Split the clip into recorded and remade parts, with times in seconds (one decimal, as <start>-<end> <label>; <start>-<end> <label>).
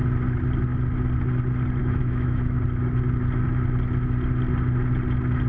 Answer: 0.0-1.8 recorded; 1.8-2.6 remade; 2.6-5.5 recorded